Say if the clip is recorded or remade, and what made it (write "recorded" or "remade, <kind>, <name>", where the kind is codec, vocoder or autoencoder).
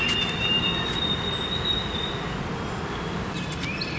recorded